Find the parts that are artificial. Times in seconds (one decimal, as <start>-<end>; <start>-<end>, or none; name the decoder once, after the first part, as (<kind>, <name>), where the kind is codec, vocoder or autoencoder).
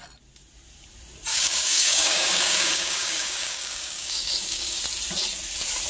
1.3-4.8 (codec, DAC)